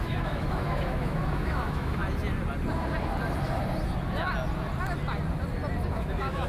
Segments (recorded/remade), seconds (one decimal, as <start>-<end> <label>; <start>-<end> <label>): 0.0-2.0 remade; 2.0-5.9 recorded; 5.9-6.5 remade

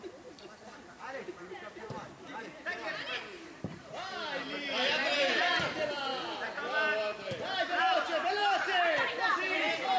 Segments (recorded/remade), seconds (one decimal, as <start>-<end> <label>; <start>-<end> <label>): 0.0-6.1 remade; 6.1-7.8 recorded; 7.8-8.4 remade; 8.4-8.9 recorded; 8.9-10.0 remade